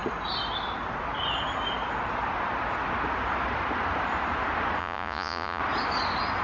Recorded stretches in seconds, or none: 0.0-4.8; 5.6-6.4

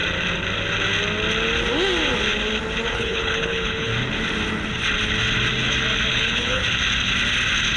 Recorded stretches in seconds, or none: 0.0-2.9; 3.9-6.1; 6.6-7.8

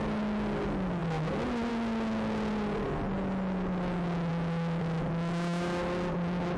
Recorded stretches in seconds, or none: 0.0-6.6

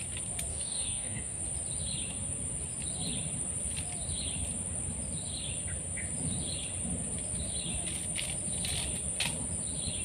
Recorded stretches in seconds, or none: 0.0-0.5; 1.4-10.0

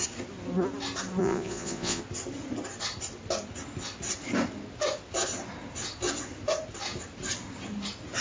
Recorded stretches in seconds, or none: 0.0-1.2; 2.0-8.2

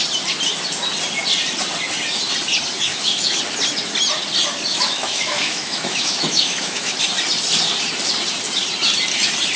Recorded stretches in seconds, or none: 0.0-2.9; 3.4-4.7; 7.0-9.6

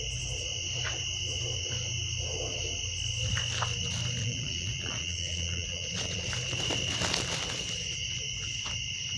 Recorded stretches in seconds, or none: 0.0-4.2; 6.3-9.2